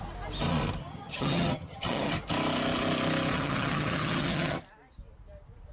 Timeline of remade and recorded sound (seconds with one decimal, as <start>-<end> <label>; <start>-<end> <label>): 0.0-0.8 recorded; 0.8-2.1 remade; 2.1-3.3 recorded; 3.3-4.6 remade; 4.6-5.7 recorded